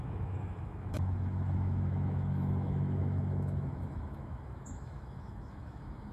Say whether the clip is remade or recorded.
remade